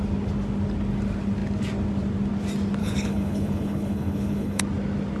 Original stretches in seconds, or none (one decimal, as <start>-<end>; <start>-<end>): 0.0-2.8; 4.6-5.2